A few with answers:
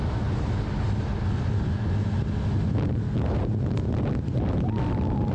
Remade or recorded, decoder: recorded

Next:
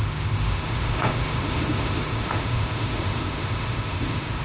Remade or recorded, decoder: remade, autoencoder, DAC-VAE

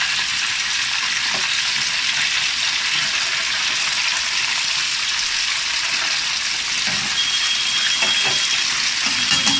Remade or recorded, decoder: recorded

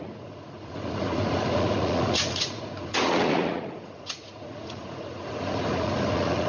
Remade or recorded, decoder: remade, vocoder, Vocos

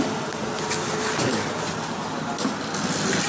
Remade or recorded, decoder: recorded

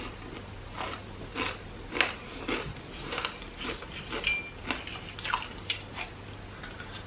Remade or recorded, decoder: recorded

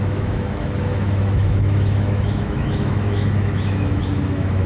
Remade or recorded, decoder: remade, autoencoder, DAC-VAE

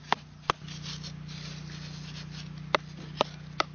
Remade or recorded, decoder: recorded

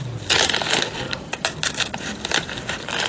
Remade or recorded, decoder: recorded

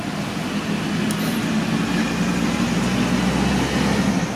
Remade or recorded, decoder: recorded